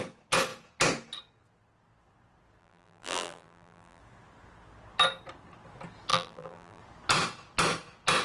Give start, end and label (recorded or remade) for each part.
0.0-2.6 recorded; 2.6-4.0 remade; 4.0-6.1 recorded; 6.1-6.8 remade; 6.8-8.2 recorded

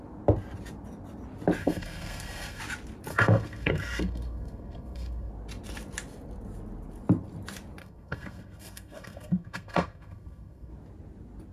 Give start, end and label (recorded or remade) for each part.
0.0-1.6 recorded; 1.6-2.6 remade; 2.6-3.1 recorded; 3.1-5.3 remade; 5.3-7.8 recorded; 7.8-10.7 remade; 10.7-11.5 recorded

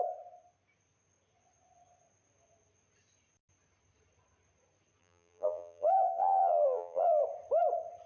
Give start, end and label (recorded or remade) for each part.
0.0-5.0 recorded; 5.0-7.2 remade; 7.2-8.1 recorded

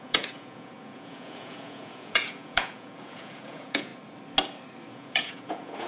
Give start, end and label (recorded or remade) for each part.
0.0-3.9 remade; 3.9-4.9 recorded; 4.9-5.9 remade

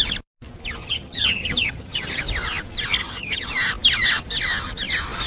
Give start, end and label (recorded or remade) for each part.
0.0-0.8 recorded; 0.8-2.2 remade; 2.2-3.0 recorded; 3.0-3.5 remade; 3.5-5.3 recorded

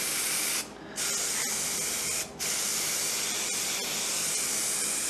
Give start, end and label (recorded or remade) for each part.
0.0-5.1 recorded

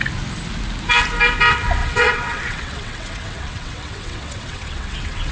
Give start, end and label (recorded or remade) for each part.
0.0-1.8 recorded; 1.8-5.3 remade

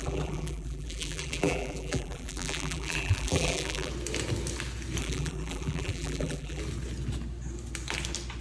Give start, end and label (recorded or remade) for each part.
0.0-3.9 remade; 3.9-5.0 recorded; 5.0-6.6 remade; 6.6-8.4 recorded